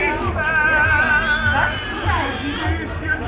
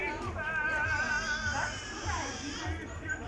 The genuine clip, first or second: first